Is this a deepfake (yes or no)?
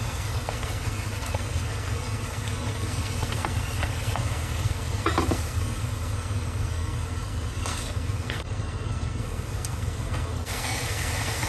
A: yes